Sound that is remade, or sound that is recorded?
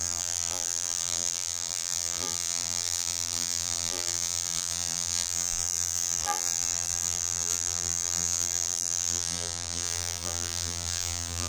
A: remade